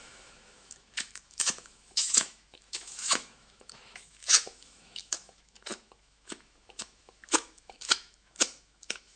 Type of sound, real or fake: fake